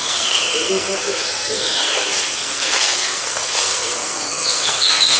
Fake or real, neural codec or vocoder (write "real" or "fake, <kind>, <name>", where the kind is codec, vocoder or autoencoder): fake, codec, SNAC